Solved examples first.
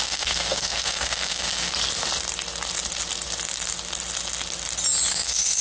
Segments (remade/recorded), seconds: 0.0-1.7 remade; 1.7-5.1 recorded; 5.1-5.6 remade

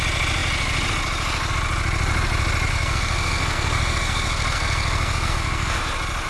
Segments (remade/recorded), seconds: 0.0-2.7 recorded; 2.7-5.8 remade; 5.8-6.3 recorded

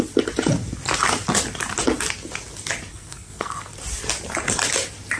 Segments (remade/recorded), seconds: 0.0-2.9 recorded; 2.9-3.7 remade; 3.7-5.2 recorded

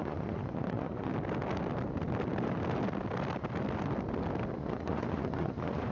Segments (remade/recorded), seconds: 0.0-1.1 remade; 1.1-4.6 recorded; 4.6-5.9 remade

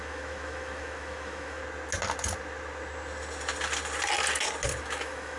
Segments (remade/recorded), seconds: 0.0-1.6 remade; 1.6-4.8 recorded; 4.8-5.4 remade

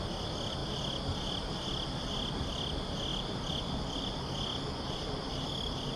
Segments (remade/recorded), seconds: 0.0-6.0 recorded